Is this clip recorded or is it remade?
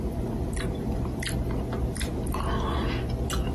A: recorded